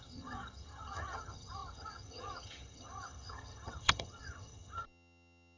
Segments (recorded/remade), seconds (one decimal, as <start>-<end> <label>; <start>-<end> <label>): 0.0-5.6 remade

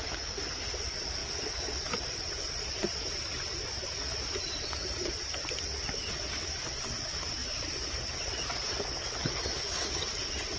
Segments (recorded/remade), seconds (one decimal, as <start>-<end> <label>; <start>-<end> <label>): 0.0-1.2 recorded; 1.2-6.1 remade; 6.1-7.4 recorded; 7.4-8.0 remade; 8.0-10.6 recorded